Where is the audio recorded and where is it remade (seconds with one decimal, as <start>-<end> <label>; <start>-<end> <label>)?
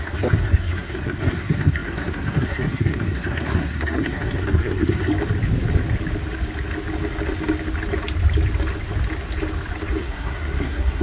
0.0-5.1 remade; 5.1-10.0 recorded; 10.0-11.0 remade